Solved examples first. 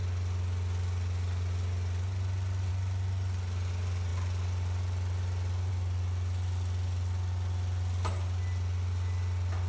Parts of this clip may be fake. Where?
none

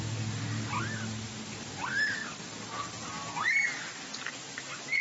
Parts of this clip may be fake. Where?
none

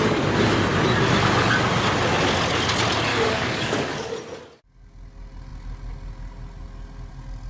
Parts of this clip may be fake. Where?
3.1-4.1 (codec, DAC)

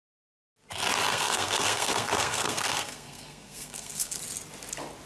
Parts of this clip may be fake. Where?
1.1-4.2 (codec, SNAC)

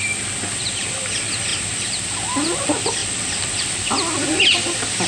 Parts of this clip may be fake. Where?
none